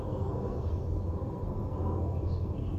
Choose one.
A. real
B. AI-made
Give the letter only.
B